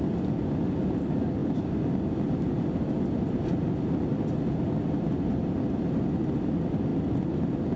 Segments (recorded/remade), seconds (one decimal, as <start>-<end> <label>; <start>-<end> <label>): 0.0-7.8 recorded